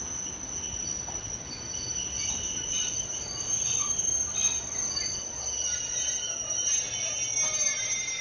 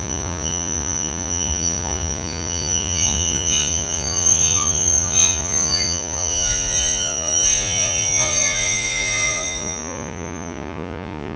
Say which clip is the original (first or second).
first